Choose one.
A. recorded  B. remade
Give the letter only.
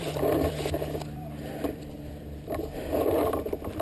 B